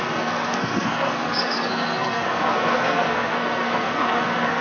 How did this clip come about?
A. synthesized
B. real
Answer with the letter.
A